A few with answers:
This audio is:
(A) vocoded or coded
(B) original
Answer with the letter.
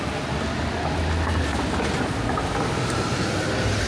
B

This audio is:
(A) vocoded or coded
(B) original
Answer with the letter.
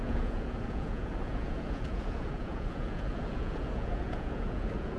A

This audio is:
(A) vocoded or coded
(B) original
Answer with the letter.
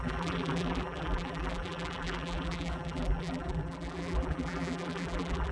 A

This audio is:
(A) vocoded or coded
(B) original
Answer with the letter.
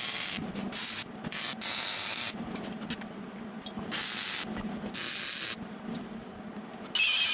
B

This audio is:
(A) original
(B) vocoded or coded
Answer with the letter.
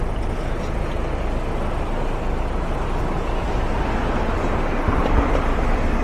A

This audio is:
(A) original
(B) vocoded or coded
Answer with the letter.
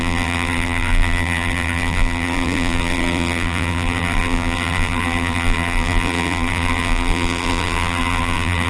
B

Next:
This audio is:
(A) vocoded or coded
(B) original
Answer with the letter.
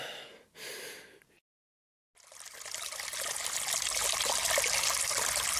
B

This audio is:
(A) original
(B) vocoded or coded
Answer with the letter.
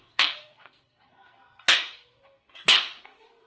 B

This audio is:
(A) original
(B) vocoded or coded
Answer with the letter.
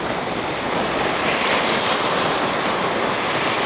A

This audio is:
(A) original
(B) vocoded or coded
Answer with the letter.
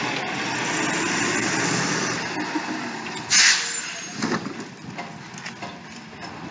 A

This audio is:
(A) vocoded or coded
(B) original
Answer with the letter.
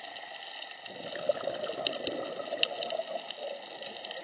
B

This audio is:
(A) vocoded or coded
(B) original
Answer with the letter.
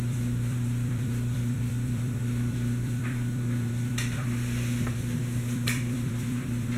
A